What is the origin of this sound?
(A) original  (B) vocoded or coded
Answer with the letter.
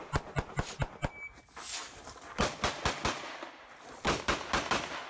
A